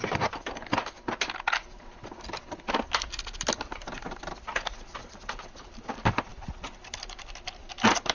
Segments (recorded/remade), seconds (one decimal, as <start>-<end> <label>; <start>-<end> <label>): 0.0-8.1 recorded